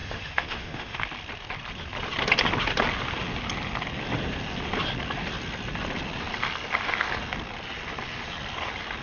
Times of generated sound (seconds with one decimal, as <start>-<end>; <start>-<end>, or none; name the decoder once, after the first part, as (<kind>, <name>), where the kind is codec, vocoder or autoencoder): 0.0-1.0 (autoencoder, DAC-VAE)